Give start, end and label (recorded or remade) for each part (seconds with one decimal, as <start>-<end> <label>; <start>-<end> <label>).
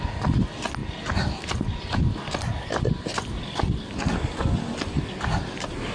0.0-5.9 recorded